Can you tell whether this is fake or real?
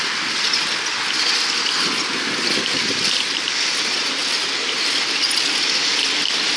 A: real